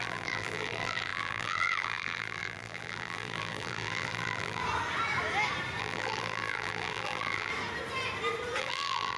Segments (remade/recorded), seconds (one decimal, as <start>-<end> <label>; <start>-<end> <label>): 0.0-4.6 remade; 4.6-5.8 recorded; 5.8-7.5 remade; 7.5-8.6 recorded; 8.6-9.2 remade